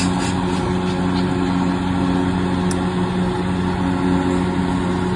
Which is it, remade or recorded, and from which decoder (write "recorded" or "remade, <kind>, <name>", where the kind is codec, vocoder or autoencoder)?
recorded